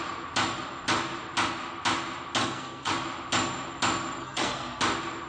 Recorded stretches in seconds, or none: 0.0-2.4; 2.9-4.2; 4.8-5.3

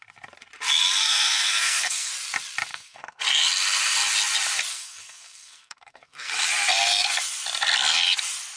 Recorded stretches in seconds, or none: 0.0-1.0; 2.1-2.7; 3.2-4.7; 6.3-8.6